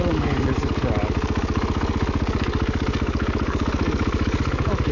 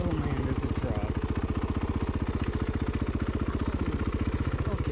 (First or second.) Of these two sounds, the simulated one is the first